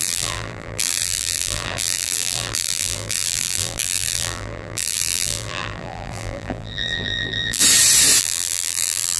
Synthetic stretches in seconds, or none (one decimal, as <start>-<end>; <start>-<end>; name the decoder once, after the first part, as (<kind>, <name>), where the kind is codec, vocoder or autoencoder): 0.0-7.6 (vocoder, BigVGAN v2); 8.2-9.2